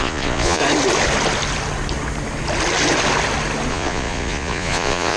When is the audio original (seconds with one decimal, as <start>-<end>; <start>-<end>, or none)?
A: 0.6-3.7